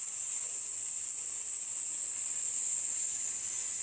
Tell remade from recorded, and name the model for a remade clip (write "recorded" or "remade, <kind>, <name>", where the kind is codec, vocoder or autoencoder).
recorded